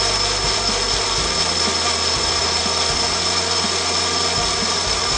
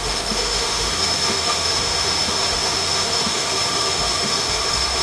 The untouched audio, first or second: first